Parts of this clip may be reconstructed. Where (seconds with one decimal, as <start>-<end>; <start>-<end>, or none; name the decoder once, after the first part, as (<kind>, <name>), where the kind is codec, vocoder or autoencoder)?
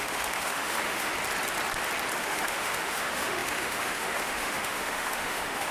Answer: 0.0-1.1 (autoencoder, DAC-VAE); 2.2-5.7